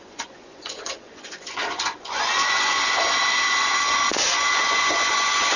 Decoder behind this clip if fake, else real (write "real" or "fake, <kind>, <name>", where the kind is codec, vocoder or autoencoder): fake, vocoder, Vocos